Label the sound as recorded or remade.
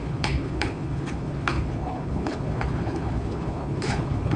remade